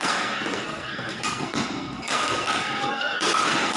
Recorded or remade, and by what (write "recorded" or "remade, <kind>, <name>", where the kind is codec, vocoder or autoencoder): remade, codec, SNAC